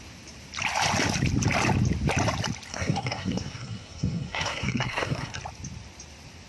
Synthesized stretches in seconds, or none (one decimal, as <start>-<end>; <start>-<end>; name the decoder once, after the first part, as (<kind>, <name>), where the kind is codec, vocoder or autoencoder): 2.7-5.4 (codec, SNAC)